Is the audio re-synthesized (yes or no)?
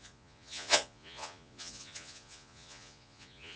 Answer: yes